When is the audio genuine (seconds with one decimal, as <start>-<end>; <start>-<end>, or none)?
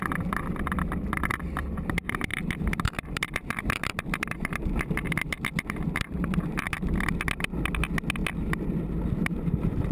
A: 0.0-2.3; 7.1-9.9